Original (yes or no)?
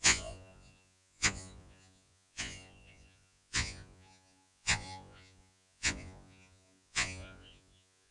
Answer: no